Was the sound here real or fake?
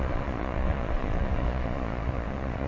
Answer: fake